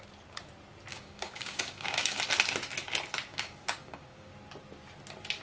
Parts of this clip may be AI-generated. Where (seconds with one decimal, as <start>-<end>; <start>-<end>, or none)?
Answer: 0.9-2.2; 3.3-4.3